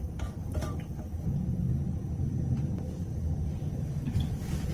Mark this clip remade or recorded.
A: remade